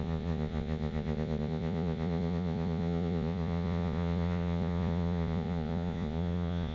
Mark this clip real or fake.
fake